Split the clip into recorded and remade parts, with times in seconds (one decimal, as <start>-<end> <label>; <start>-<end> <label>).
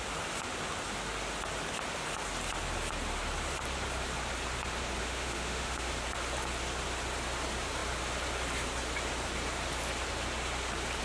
0.0-5.0 recorded; 5.0-5.9 remade; 5.9-11.0 recorded